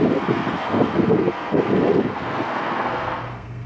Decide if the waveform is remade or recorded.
remade